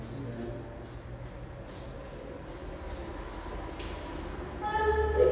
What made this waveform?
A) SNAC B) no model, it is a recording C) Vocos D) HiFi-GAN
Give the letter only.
B